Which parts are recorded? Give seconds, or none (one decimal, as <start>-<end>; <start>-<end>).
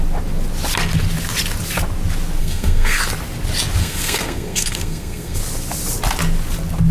0.0-2.4; 3.0-3.8; 5.4-6.9